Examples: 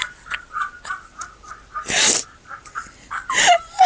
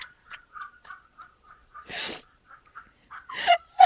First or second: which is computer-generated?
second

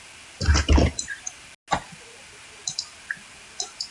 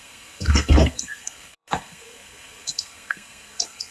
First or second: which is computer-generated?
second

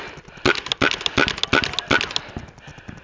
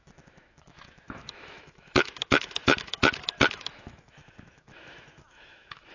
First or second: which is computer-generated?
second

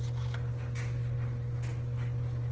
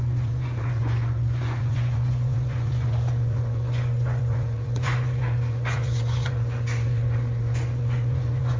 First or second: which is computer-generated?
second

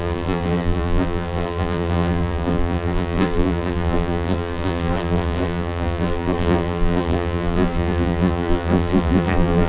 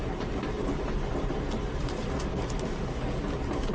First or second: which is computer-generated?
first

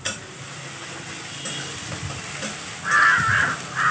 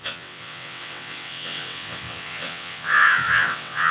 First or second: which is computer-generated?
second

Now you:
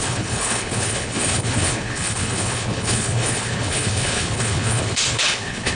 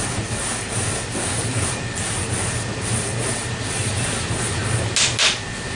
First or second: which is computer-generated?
first